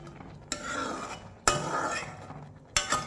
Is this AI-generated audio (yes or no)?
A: no